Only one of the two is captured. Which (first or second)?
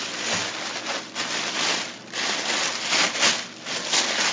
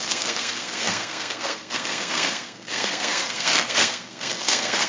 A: first